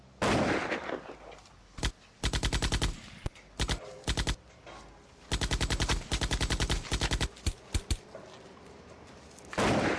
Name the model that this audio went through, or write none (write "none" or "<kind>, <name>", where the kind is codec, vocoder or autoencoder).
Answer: none